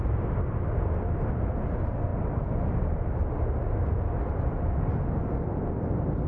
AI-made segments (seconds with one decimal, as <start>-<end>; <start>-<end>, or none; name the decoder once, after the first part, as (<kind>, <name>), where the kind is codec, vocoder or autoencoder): none